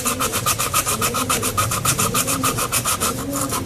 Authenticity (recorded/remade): remade